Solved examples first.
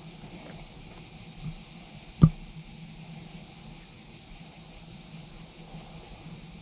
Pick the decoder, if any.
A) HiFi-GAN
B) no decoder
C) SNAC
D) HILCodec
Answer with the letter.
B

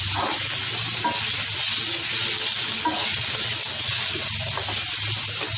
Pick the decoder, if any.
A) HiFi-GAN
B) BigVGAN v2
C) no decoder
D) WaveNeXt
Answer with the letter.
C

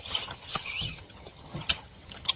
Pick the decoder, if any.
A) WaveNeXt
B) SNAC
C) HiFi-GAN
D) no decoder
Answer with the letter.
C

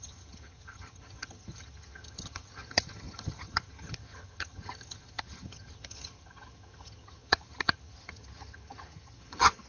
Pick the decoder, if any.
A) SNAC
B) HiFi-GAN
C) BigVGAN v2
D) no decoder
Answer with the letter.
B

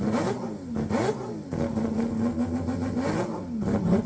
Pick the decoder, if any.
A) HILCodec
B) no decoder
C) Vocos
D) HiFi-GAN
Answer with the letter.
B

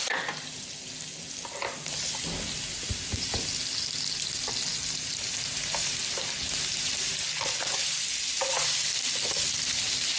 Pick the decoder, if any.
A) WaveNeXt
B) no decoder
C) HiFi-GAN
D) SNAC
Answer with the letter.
B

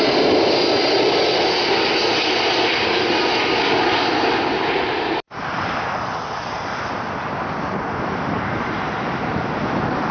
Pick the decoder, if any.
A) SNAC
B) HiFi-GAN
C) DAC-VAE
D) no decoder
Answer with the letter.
D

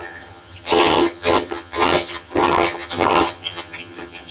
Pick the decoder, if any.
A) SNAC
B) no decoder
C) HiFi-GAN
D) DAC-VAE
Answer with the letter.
C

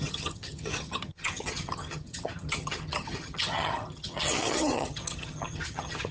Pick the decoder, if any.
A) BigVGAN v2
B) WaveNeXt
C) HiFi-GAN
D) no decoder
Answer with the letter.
C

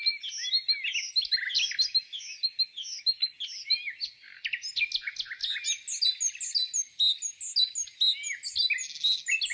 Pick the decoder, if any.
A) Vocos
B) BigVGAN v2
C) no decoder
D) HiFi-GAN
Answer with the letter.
C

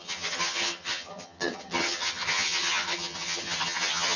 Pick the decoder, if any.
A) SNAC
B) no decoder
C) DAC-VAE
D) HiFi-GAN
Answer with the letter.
D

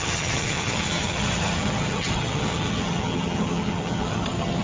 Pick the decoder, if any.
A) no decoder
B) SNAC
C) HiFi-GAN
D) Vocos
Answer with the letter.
C